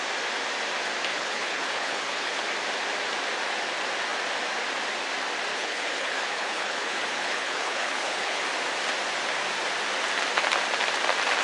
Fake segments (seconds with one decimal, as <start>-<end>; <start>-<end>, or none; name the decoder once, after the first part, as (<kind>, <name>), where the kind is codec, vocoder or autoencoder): 1.1-2.4 (codec, HILCodec); 5.5-8.4